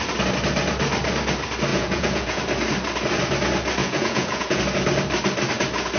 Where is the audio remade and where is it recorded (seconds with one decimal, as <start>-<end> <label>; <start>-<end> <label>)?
0.0-1.7 recorded; 1.7-2.4 remade; 2.4-3.8 recorded; 3.8-4.6 remade; 4.6-6.0 recorded